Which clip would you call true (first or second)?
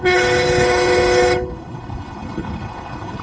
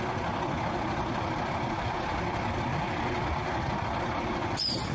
second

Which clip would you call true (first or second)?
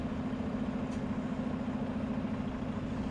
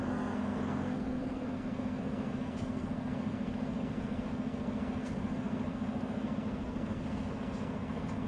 first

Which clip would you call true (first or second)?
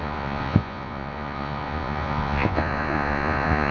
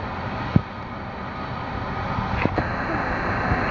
second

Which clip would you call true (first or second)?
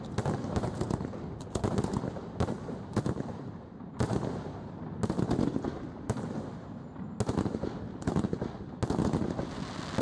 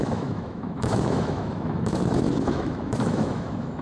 first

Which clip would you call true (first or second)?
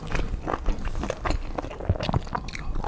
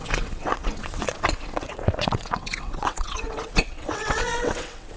first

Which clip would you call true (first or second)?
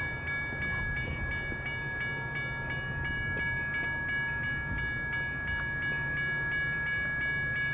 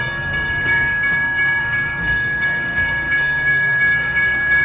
first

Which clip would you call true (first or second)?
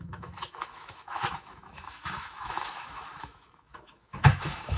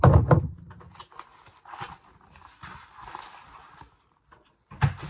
second